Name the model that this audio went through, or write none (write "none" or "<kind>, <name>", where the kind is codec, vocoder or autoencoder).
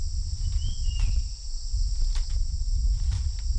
none